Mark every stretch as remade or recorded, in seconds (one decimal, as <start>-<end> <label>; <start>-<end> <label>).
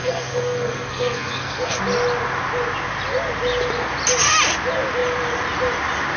0.0-1.8 remade; 1.8-6.2 recorded